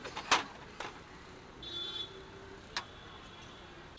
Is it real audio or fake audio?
real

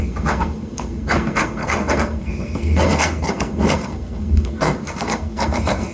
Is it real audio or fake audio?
fake